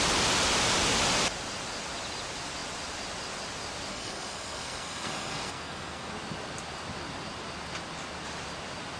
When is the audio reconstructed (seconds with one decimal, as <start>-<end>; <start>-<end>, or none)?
3.9-6.1

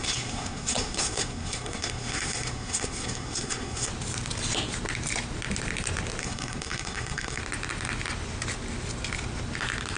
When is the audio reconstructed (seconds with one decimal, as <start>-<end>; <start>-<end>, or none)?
0.0-3.9; 6.2-7.4